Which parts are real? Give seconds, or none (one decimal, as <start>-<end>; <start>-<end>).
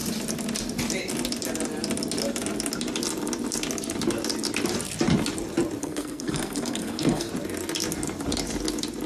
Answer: 0.0-5.8; 7.3-9.1